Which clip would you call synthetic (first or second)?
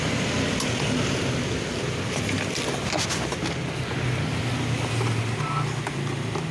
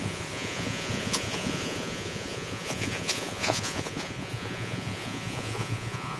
second